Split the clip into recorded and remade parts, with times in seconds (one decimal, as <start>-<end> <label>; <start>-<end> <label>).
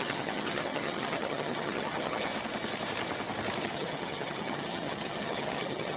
0.0-2.3 remade; 2.3-3.6 recorded; 3.6-6.0 remade